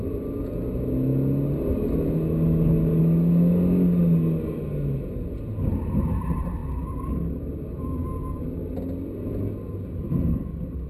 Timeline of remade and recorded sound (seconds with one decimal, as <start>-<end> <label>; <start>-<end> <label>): 0.0-10.9 recorded